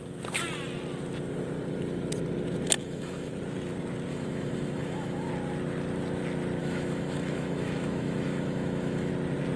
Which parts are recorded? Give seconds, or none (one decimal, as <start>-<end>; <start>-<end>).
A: 0.0-2.8; 3.3-4.1; 5.3-6.6; 9.1-9.6